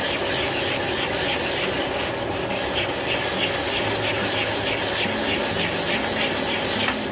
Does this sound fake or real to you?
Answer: real